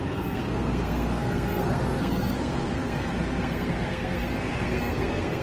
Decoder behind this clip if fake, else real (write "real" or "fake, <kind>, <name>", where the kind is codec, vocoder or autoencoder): fake, codec, SNAC